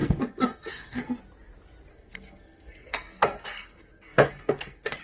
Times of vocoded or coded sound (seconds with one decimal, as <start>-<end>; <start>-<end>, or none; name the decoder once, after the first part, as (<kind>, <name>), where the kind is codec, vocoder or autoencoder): 0.0-1.2 (codec, SNAC); 1.9-5.0